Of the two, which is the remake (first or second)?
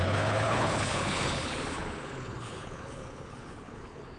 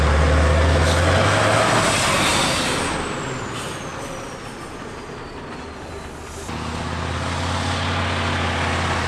first